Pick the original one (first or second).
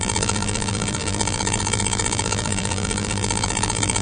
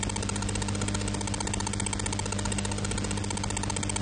second